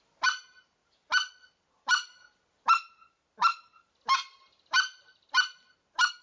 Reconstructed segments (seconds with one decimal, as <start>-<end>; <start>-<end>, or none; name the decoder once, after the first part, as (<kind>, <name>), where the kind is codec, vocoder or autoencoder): none